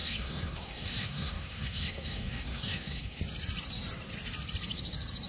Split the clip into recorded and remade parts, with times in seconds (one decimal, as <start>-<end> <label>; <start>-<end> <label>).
0.0-3.2 remade; 3.2-5.3 recorded